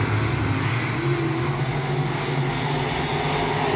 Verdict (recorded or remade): recorded